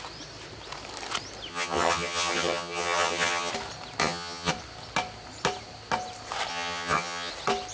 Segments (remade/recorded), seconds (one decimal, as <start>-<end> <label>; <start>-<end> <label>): 0.0-1.5 recorded; 1.5-3.5 remade; 3.5-4.0 recorded; 4.0-4.5 remade; 4.5-6.5 recorded; 6.5-7.3 remade; 7.3-7.7 recorded